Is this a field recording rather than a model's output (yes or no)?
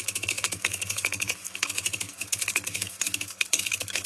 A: no